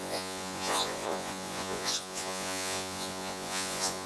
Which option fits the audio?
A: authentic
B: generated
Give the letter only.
B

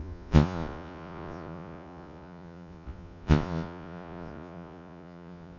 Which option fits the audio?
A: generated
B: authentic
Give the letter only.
A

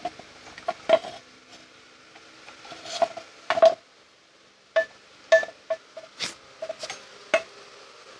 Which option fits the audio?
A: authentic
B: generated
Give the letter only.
A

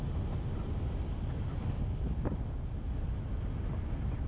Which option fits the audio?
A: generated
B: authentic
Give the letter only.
B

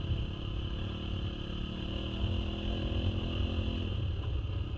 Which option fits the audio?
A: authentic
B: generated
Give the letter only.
A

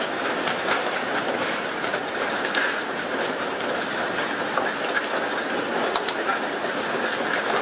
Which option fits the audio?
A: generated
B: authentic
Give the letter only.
B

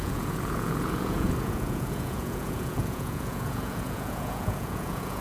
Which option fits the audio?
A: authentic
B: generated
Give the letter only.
B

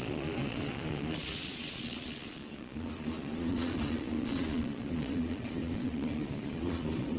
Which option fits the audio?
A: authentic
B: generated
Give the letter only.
B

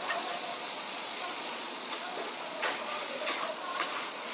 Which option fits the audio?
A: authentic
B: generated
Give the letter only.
B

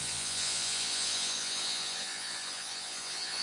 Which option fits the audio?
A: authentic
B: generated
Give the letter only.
B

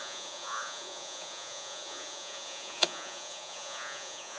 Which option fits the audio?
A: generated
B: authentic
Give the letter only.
A